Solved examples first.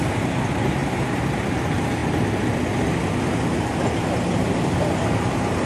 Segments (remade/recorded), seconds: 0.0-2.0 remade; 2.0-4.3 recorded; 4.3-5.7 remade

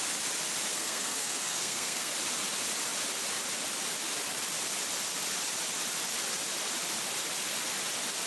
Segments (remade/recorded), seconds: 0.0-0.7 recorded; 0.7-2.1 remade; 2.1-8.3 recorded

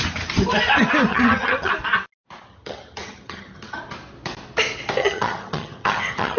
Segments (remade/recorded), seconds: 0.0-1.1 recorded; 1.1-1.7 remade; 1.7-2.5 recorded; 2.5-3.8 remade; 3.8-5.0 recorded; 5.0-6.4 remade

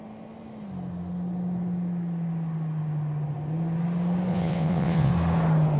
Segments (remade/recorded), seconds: 0.0-4.3 recorded; 4.3-5.1 remade; 5.1-5.8 recorded

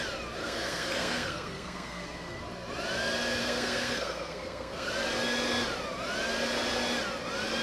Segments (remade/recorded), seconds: 0.0-0.4 recorded; 0.4-2.4 remade; 2.4-3.4 recorded; 3.4-4.9 remade; 4.9-7.6 recorded